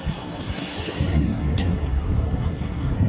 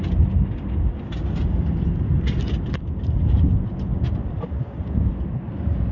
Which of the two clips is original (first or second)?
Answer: second